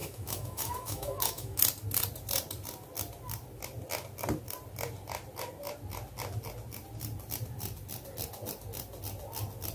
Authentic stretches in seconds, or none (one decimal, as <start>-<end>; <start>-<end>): 1.6-9.7